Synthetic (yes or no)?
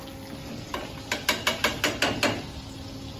no